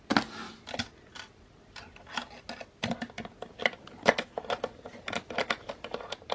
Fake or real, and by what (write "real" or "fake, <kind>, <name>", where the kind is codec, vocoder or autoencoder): real